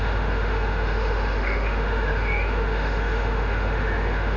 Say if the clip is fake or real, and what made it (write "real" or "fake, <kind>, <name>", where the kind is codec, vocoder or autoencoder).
fake, autoencoder, DAC-VAE